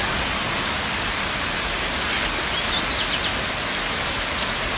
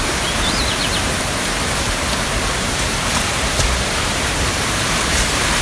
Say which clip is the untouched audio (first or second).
first